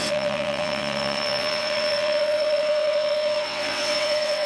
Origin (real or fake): fake